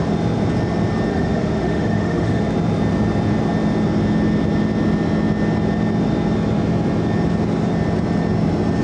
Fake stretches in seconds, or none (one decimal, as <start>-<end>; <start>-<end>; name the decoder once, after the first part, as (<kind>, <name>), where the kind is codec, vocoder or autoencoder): 1.1-2.4 (autoencoder, DAC-VAE)

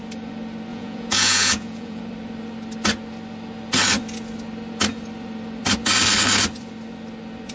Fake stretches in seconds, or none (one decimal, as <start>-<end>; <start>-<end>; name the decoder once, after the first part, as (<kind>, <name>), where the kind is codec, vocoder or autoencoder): 0.7-2.0 (vocoder, Vocos)

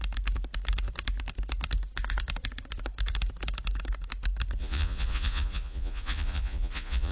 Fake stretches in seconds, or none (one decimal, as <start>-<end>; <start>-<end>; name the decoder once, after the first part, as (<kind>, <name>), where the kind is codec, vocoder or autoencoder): 4.6-7.1 (vocoder, Vocos)

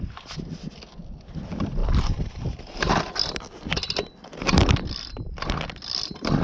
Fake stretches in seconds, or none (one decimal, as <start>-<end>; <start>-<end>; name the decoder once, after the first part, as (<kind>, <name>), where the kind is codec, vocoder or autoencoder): none

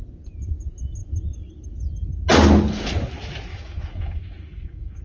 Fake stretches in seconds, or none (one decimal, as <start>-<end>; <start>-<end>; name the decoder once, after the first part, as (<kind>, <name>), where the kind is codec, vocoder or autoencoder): 3.5-5.0 (autoencoder, DAC-VAE)

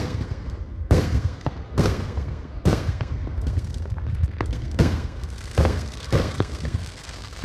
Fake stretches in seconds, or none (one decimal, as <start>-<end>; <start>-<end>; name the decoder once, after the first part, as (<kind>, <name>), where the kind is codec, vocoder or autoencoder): 0.0-7.4 (codec, SNAC)

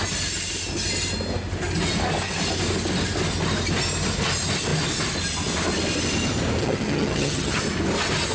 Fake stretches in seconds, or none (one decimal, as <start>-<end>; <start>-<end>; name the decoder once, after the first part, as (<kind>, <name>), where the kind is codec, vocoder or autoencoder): 6.6-7.6 (vocoder, HiFi-GAN)